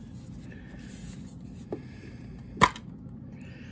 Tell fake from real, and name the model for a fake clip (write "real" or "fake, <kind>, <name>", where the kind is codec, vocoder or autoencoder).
real